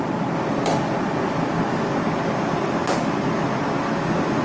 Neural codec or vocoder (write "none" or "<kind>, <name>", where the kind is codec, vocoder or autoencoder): none